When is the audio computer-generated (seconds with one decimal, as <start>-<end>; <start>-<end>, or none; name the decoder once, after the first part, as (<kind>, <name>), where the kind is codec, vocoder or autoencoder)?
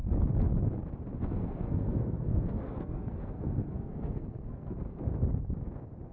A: 1.4-5.0 (codec, SNAC)